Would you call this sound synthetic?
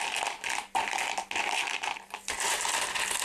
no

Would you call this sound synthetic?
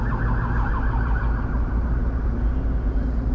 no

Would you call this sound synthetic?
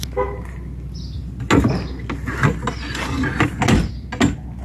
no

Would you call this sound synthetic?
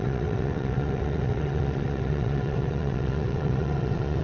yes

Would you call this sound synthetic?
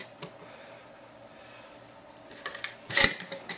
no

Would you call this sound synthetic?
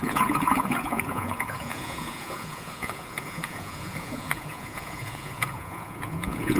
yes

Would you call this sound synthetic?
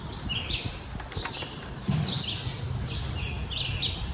no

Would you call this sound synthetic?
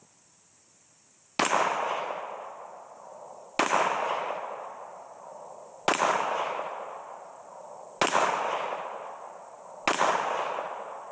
no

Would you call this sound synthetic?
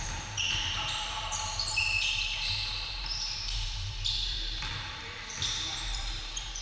yes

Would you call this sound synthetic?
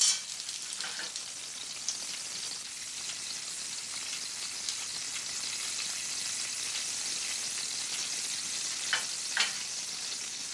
no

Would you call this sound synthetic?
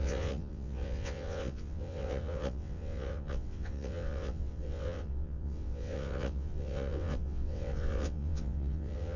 yes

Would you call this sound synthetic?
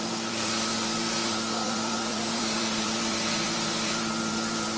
yes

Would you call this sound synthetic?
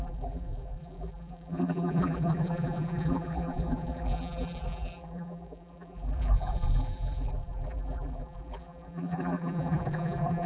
yes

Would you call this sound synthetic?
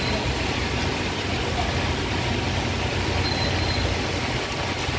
no